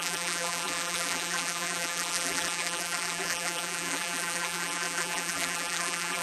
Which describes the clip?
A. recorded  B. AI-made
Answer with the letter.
B